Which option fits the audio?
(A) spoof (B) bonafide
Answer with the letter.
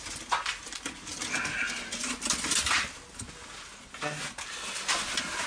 B